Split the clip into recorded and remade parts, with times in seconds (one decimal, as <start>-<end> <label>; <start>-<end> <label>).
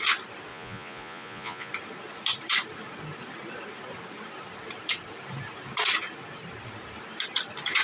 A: 0.0-0.5 recorded; 0.5-1.7 remade; 1.7-7.8 recorded